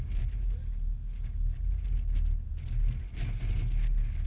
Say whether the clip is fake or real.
real